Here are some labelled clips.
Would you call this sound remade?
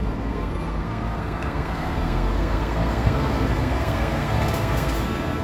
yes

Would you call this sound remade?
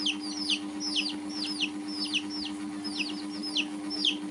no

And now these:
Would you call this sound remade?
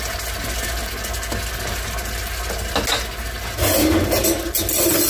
no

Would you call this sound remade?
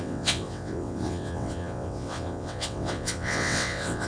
yes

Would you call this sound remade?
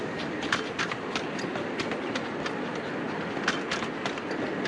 no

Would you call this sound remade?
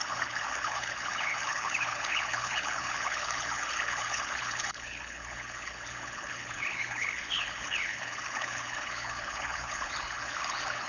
yes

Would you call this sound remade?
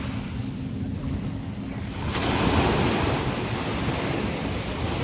no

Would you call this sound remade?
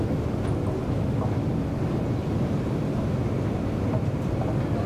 no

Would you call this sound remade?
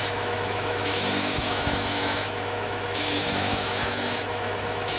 yes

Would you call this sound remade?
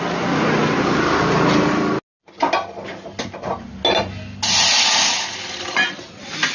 no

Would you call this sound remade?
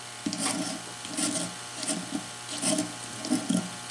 no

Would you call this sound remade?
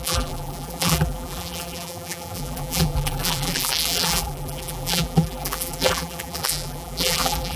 yes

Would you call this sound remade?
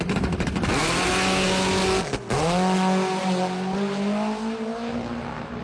no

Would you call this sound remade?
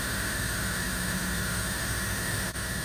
yes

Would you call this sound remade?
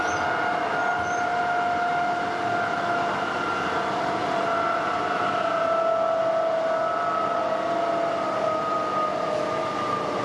no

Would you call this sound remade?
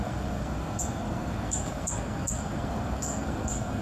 yes